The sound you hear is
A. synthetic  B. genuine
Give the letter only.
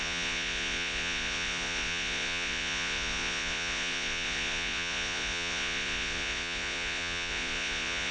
A